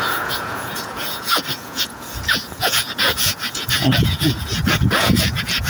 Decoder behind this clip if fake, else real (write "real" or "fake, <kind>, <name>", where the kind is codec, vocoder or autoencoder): fake, vocoder, Vocos